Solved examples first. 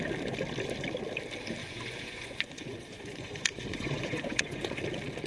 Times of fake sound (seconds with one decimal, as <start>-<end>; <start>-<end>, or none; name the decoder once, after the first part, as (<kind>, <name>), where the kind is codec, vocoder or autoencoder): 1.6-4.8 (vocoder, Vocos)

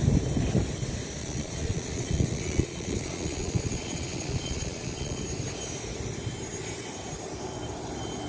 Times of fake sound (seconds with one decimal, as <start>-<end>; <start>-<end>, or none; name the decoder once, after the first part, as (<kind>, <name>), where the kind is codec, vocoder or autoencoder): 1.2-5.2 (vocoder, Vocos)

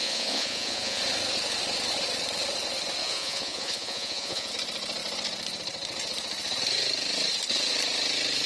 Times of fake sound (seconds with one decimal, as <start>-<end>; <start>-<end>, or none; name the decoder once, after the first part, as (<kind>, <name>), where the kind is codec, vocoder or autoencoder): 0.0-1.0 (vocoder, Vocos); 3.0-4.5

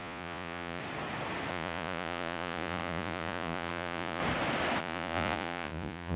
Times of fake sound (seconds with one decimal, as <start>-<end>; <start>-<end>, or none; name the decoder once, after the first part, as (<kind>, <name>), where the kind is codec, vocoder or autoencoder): 0.0-0.8 (vocoder, Vocos); 1.5-4.2; 4.8-6.2

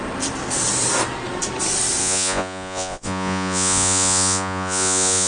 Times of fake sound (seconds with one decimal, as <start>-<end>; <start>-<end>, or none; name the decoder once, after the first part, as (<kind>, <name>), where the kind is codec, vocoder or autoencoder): 2.0-5.3 (vocoder, Vocos)

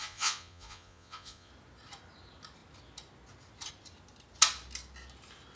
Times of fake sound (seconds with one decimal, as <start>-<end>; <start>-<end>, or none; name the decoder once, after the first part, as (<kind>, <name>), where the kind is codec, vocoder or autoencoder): 0.0-1.5 (vocoder, Vocos)

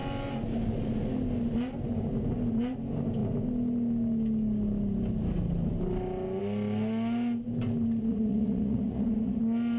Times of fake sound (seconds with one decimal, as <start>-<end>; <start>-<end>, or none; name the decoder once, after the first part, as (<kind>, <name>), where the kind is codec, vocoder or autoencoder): 8.1-9.4 (vocoder, Vocos)

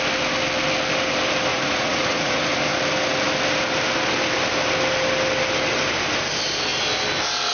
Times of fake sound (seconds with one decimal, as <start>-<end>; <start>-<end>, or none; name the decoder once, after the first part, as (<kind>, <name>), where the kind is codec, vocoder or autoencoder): 1.5-2.4 (vocoder, Vocos)